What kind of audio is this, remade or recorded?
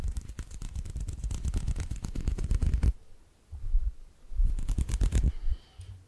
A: recorded